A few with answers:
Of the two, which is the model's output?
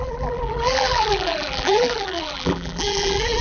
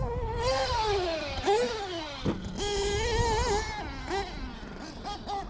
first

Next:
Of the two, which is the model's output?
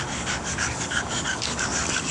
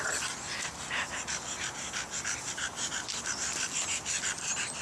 first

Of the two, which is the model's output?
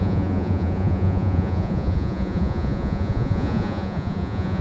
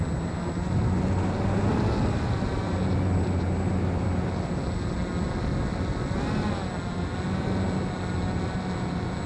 first